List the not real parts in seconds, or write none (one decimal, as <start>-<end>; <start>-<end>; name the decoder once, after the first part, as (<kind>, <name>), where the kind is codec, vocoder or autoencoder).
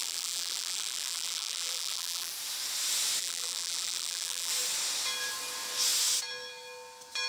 0.0-2.3 (vocoder, BigVGAN v2); 3.2-4.5